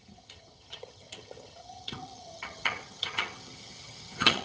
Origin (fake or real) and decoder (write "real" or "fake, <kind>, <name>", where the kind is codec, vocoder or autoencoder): fake, vocoder, HiFi-GAN